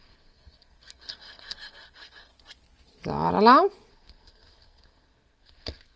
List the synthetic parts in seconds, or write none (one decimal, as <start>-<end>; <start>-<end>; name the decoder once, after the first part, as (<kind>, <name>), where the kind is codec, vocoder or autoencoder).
0.0-2.3 (codec, SNAC); 3.9-6.0